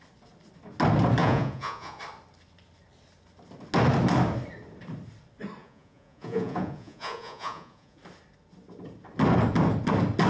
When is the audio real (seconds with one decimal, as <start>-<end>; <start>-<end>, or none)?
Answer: 0.0-1.2; 2.0-5.6; 8.0-10.3